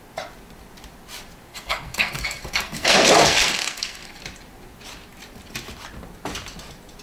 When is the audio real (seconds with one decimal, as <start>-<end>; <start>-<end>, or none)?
0.0-1.5; 4.2-7.0